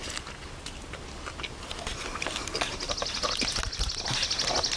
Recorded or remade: recorded